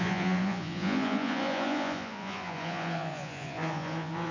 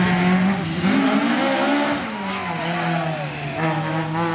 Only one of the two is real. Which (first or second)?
second